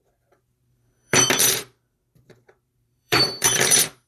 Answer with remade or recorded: remade